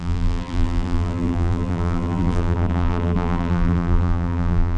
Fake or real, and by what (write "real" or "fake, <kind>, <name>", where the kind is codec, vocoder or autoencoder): fake, vocoder, BigVGAN v2